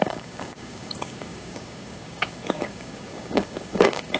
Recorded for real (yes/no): no